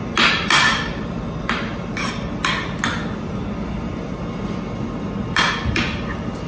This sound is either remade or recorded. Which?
recorded